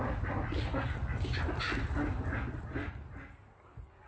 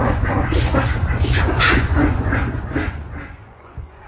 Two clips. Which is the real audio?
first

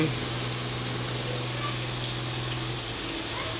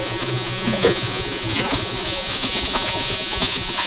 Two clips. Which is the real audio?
first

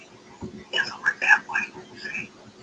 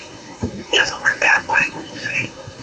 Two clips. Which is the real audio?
first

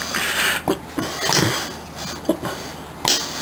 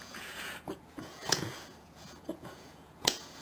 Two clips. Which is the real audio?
first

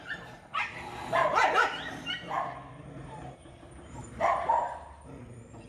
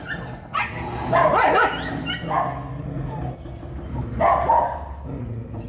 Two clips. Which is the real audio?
second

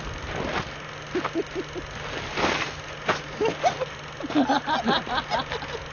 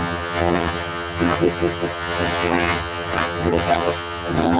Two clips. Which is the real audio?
first